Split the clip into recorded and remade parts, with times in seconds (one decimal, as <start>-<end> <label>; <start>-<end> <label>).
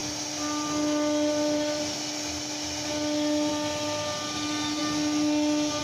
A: 0.0-5.8 recorded